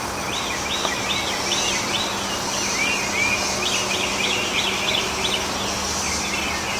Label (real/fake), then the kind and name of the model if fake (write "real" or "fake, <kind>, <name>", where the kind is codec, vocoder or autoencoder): real